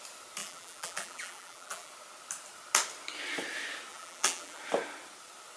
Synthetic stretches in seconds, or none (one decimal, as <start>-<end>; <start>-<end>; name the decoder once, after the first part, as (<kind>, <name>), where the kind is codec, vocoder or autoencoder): 0.4-1.9 (vocoder, BigVGAN v2); 3.9-4.6